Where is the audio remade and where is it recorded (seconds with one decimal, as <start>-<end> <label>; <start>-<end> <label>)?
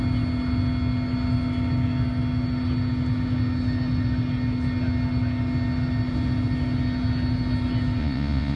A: 0.0-8.0 recorded; 8.0-8.6 remade